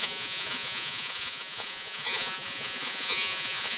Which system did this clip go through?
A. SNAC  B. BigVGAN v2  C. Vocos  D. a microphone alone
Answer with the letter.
C